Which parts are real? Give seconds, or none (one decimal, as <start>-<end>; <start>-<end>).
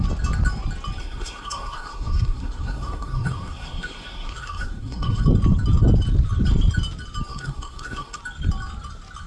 0.0-1.0; 5.2-7.3; 8.2-9.3